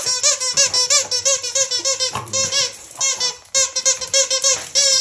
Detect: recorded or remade recorded